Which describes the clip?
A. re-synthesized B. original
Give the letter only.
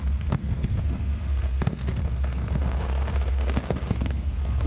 A